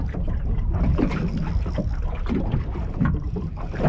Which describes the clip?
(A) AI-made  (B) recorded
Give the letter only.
B